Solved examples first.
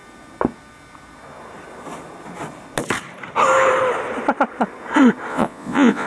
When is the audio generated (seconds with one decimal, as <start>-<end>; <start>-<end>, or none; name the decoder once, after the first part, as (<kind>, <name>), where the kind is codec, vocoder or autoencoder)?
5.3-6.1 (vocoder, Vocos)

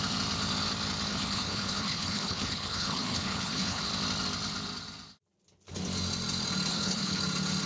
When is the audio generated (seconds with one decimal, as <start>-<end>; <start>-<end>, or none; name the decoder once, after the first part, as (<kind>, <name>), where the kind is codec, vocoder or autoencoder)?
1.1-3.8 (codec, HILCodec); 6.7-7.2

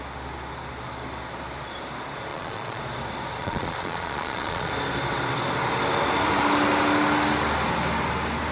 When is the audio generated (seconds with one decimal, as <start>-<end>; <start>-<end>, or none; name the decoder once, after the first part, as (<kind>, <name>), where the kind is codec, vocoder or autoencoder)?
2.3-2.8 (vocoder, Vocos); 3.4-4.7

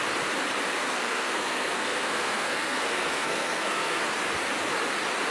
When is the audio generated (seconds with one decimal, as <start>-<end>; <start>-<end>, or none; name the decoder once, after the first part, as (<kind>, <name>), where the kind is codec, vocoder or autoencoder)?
0.8-4.0 (codec, SNAC)